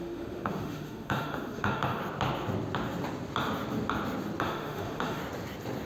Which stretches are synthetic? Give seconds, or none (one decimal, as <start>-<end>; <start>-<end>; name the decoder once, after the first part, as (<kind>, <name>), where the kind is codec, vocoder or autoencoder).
0.0-2.0 (autoencoder, DAC-VAE); 4.4-5.2